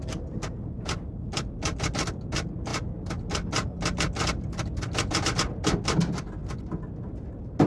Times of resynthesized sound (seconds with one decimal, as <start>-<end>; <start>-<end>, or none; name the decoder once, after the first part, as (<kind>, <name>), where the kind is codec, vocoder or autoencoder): none